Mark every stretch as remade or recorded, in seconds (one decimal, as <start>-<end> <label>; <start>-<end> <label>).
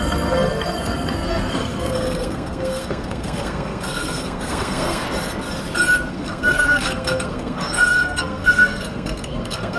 0.0-5.0 remade; 5.0-6.1 recorded; 6.1-9.8 remade